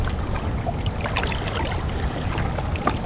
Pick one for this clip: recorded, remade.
recorded